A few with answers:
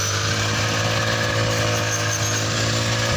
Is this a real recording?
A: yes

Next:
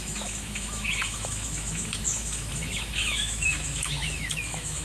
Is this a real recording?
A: no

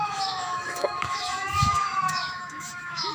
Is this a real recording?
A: no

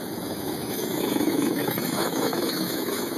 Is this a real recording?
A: no